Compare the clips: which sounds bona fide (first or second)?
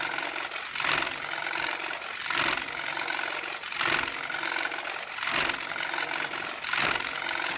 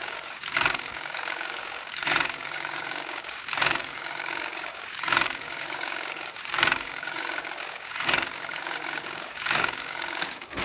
first